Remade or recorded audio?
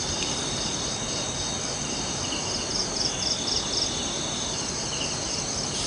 recorded